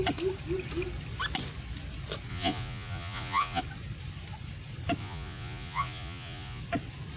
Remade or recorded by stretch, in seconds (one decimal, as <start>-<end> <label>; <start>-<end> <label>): 0.0-2.3 recorded; 2.3-3.6 remade; 3.6-5.0 recorded; 5.0-6.6 remade; 6.6-7.2 recorded